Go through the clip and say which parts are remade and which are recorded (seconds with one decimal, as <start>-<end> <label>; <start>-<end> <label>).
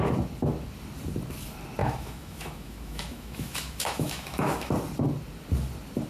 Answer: 0.0-1.8 recorded; 1.8-4.7 remade; 4.7-6.1 recorded